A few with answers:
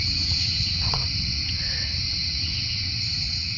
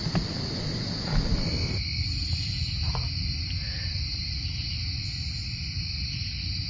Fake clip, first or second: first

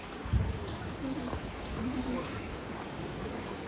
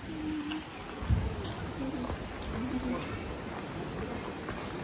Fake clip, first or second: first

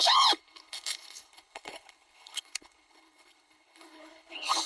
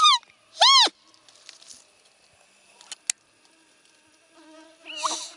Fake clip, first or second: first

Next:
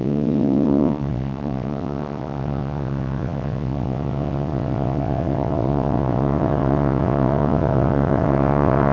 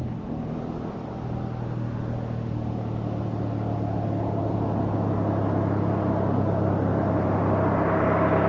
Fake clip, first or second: first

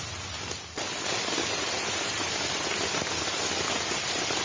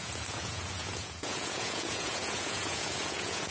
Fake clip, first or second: second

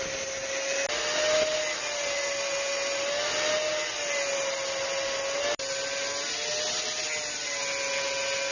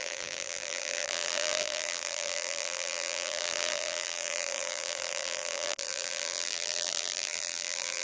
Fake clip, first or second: second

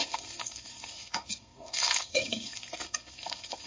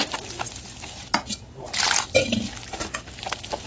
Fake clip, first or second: first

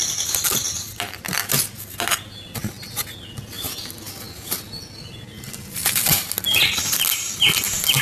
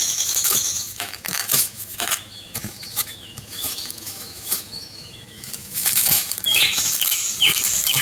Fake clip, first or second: second